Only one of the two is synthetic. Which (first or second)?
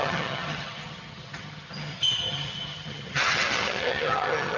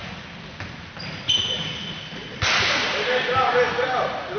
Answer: first